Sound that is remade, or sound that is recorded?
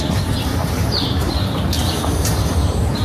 remade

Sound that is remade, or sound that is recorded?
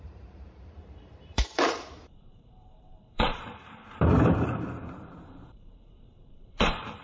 remade